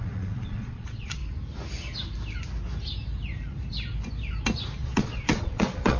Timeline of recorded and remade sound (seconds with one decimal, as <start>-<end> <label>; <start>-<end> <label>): 0.0-1.2 remade; 1.2-4.8 recorded; 4.8-6.0 remade